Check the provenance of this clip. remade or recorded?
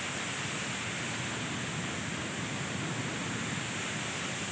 recorded